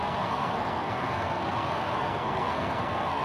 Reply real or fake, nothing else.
fake